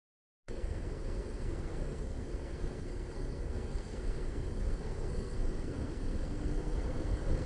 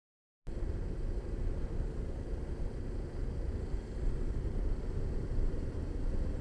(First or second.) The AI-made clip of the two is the first